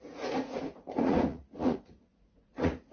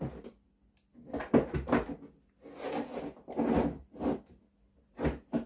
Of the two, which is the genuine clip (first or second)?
second